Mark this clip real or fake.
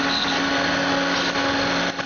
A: real